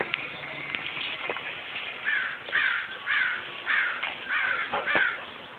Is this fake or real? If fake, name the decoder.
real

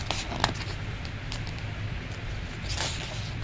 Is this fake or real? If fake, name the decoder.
real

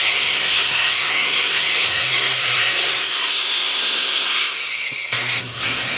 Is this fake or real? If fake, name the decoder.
fake, codec, SNAC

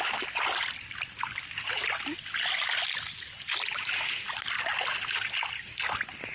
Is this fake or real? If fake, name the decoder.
real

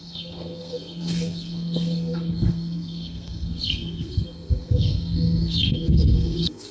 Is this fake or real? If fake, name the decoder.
fake, codec, SNAC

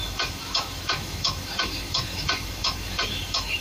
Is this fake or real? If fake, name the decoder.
fake, autoencoder, DAC-VAE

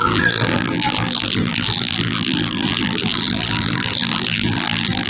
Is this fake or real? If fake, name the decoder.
fake, vocoder, BigVGAN v2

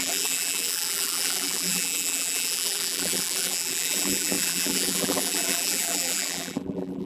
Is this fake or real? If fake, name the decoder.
fake, vocoder, BigVGAN v2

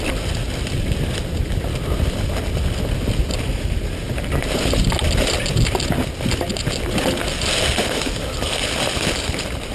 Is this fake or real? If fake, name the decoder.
real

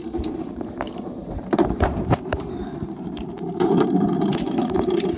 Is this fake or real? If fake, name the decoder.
fake, vocoder, BigVGAN v2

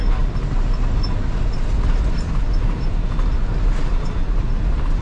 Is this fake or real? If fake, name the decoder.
real